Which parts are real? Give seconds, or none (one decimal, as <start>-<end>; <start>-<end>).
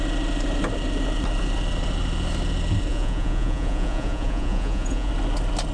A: 0.0-2.9; 5.1-5.7